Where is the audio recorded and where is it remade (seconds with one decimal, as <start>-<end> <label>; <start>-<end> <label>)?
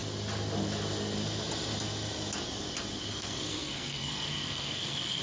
0.0-3.1 recorded; 3.1-5.2 remade